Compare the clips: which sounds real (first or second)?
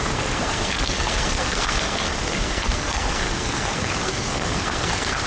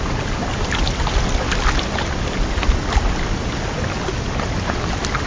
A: second